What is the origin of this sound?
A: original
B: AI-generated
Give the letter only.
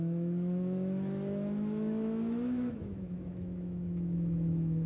B